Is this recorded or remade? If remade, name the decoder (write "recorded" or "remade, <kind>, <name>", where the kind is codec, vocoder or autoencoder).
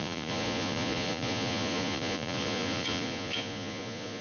remade, vocoder, Vocos